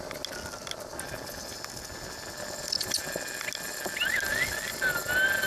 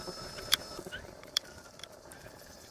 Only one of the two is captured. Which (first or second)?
first